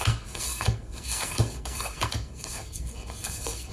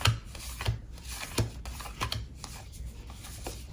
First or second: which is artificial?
first